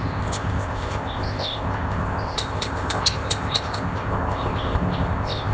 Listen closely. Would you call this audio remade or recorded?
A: remade